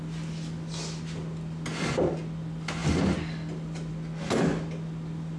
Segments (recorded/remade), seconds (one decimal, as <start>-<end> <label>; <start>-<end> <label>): 0.0-5.4 recorded